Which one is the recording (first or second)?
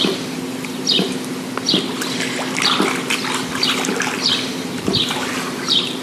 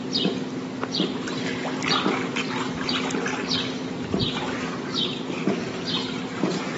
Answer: second